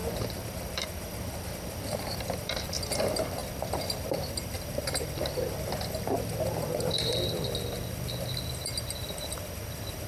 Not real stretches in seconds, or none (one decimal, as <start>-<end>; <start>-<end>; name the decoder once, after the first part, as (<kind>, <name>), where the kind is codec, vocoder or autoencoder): 0.0-2.7 (vocoder, BigVGAN v2)